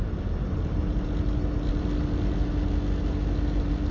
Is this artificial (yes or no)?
no